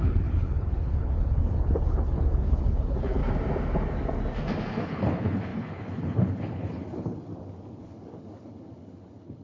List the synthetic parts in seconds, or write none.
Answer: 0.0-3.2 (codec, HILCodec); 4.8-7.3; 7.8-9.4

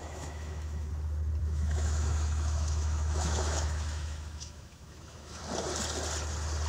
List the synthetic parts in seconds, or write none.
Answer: 0.0-0.9 (autoencoder, DAC-VAE); 1.4-5.4

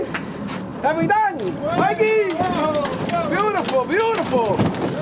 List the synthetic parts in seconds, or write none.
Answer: none

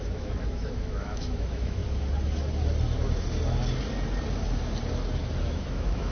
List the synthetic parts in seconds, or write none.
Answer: 0.0-1.8 (autoencoder, DAC-VAE); 5.5-6.1

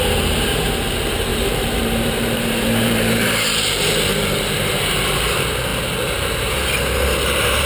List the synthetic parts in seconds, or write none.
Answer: 1.3-5.2 (vocoder, BigVGAN v2)

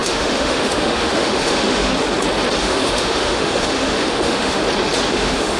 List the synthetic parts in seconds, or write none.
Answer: 0.0-1.9 (autoencoder, DAC-VAE); 2.6-4.6; 5.1-5.6

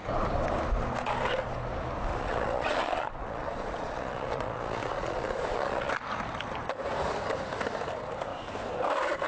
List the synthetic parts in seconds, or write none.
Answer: 2.1-5.9 (vocoder, Vocos)